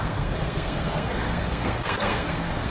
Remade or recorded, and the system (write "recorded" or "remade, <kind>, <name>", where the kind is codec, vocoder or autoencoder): remade, codec, SNAC